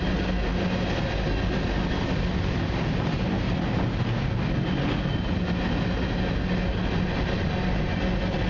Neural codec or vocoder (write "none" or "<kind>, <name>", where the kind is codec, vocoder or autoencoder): none